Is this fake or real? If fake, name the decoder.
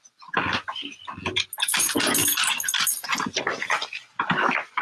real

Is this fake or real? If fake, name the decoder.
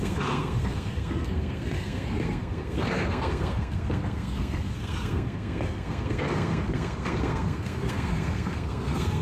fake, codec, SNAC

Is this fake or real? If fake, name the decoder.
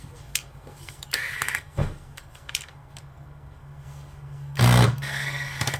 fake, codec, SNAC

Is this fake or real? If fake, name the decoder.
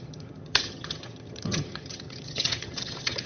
fake, vocoder, HiFi-GAN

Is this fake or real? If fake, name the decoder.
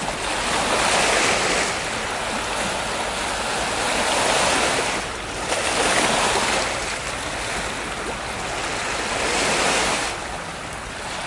real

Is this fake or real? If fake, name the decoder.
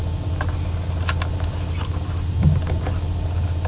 real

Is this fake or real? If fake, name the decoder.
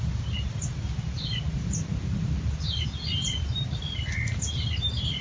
real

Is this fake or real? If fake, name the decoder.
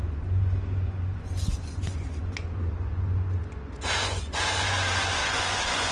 fake, vocoder, Vocos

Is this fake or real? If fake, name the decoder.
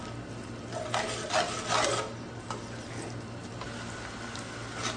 real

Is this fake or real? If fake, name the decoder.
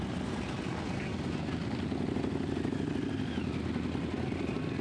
real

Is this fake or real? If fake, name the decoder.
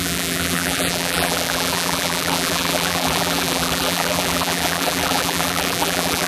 fake, vocoder, BigVGAN v2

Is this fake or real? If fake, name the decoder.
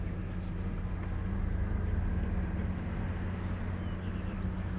real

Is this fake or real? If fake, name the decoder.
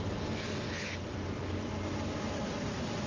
real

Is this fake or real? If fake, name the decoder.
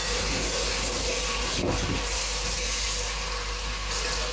real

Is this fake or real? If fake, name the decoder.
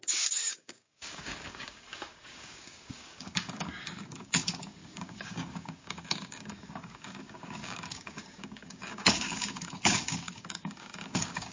fake, codec, DAC